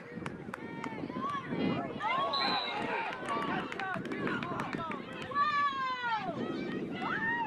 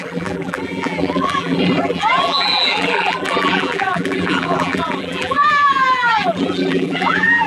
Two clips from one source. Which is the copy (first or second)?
second